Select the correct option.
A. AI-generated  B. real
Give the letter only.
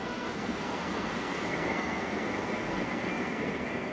A